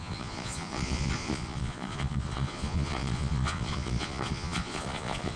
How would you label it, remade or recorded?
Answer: remade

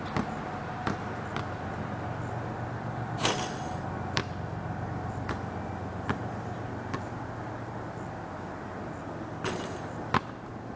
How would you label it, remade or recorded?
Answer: recorded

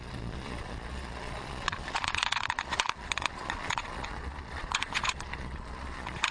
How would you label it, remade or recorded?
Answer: remade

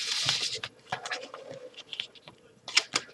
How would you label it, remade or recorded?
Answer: remade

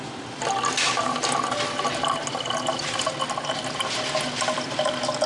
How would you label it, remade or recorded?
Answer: recorded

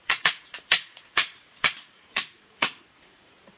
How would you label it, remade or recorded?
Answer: remade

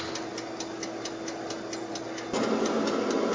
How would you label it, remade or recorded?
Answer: recorded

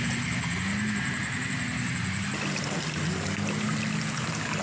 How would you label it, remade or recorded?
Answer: recorded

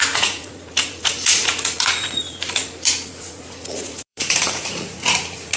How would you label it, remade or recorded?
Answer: remade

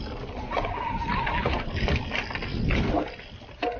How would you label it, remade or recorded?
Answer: recorded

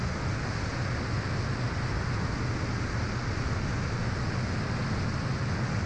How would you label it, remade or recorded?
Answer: recorded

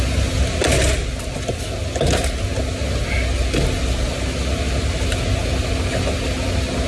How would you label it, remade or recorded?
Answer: recorded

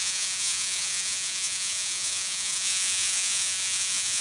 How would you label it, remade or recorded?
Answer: remade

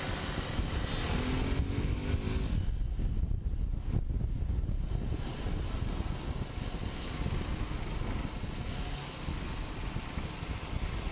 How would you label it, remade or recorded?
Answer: recorded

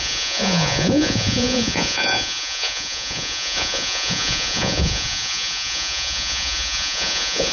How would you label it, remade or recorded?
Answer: remade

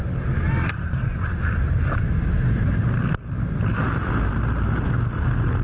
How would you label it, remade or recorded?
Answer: recorded